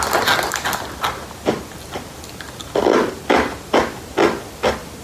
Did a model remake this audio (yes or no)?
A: no